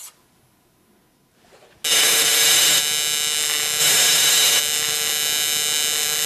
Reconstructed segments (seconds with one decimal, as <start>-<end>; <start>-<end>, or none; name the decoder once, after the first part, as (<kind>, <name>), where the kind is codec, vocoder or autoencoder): 1.9-2.8 (autoencoder, DAC-VAE); 3.8-4.6